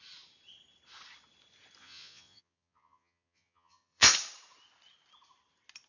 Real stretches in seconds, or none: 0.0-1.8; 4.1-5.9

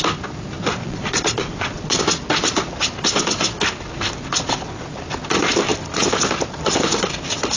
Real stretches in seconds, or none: 0.0-0.8; 2.0-7.6

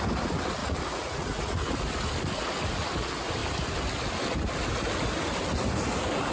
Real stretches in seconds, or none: 0.0-0.6; 1.7-6.3

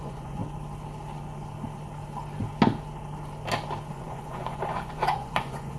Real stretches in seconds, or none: 0.4-3.9